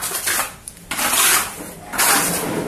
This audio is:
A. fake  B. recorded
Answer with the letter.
B